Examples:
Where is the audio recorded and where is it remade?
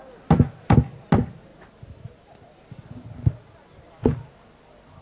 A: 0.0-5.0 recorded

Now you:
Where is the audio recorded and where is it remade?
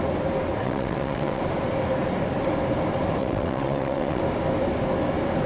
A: 0.0-0.6 recorded; 0.6-1.4 remade; 1.4-3.2 recorded; 3.2-4.2 remade; 4.2-5.5 recorded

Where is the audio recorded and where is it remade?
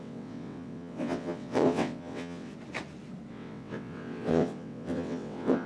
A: 0.0-2.5 remade; 2.5-3.3 recorded; 3.3-5.7 remade